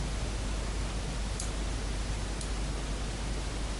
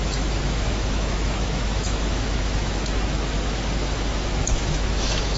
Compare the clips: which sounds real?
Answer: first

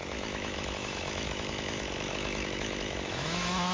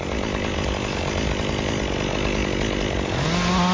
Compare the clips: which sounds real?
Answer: second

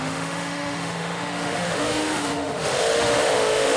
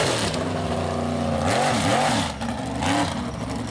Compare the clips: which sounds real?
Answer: second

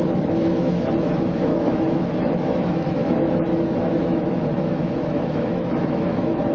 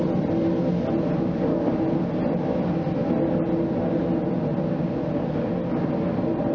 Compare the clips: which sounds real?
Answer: second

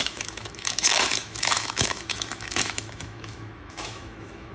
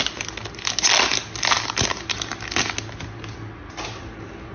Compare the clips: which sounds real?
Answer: second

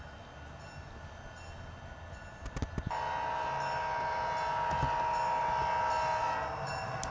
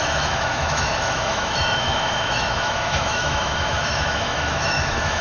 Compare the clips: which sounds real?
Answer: first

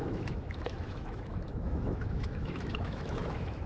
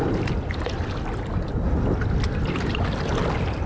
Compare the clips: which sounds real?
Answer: second